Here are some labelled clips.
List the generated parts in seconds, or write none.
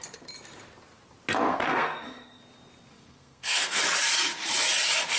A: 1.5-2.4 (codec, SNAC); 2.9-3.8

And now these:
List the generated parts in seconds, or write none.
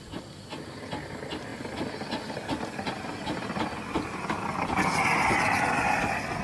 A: none